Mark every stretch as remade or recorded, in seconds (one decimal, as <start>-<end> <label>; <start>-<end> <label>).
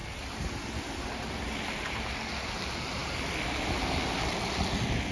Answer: 0.0-5.1 recorded